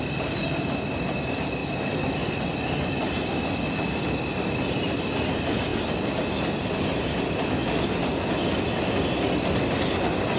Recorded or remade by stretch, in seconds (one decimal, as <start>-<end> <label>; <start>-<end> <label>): 0.0-10.4 recorded